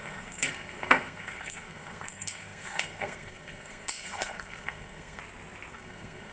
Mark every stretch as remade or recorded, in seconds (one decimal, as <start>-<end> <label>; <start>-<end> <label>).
0.0-5.2 remade; 5.2-5.7 recorded; 5.7-6.3 remade